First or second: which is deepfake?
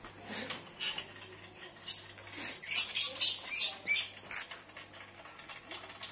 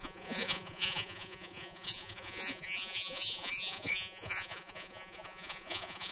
second